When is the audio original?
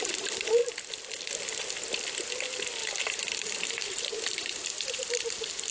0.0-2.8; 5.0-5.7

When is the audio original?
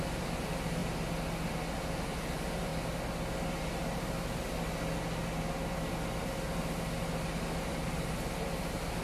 0.8-2.0; 2.7-7.7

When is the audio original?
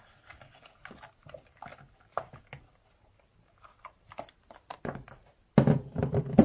0.0-1.7; 2.4-3.3; 5.3-6.4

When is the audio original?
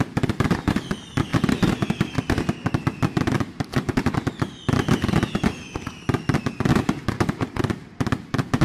0.0-1.3; 4.4-8.6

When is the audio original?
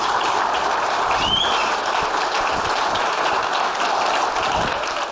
1.6-5.1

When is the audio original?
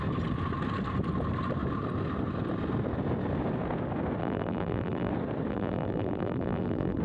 0.0-4.2; 5.1-5.5